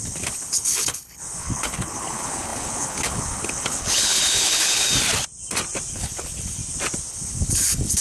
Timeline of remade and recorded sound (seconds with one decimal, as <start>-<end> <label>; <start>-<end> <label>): 0.0-4.9 remade; 4.9-5.9 recorded; 5.9-6.6 remade; 6.6-7.1 recorded; 7.1-8.0 remade

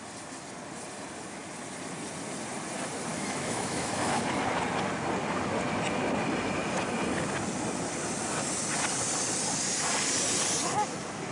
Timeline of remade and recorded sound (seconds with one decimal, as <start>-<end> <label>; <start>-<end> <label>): 0.0-3.1 recorded; 3.1-4.2 remade; 4.2-11.3 recorded

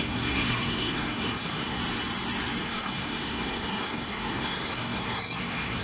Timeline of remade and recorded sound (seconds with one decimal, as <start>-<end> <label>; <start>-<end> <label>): 0.0-1.8 remade; 1.8-2.6 recorded; 2.6-5.8 remade

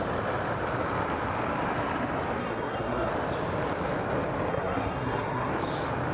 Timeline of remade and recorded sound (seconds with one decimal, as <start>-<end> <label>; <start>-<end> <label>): 0.0-2.4 recorded; 2.4-3.1 remade; 3.1-4.5 recorded; 4.5-5.5 remade; 5.5-6.1 recorded

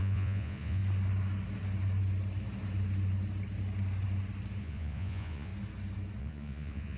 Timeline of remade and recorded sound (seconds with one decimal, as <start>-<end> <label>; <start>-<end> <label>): 0.0-0.8 remade; 0.8-4.6 recorded; 4.6-5.5 remade; 5.5-6.2 recorded; 6.2-7.0 remade

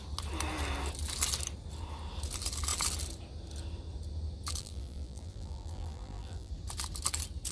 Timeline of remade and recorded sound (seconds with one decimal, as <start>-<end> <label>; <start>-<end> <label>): 0.0-4.6 recorded; 4.6-6.5 remade; 6.5-7.5 recorded

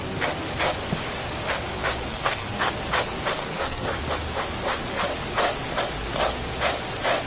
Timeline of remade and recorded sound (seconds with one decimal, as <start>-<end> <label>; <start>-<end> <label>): 0.0-2.1 recorded; 2.1-2.7 remade; 2.7-3.4 recorded; 3.4-4.0 remade; 4.0-7.3 recorded